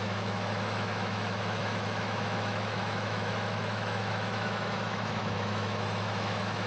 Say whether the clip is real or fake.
fake